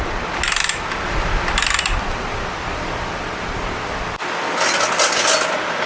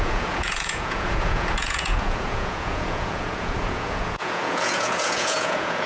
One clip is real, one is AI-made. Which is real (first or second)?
first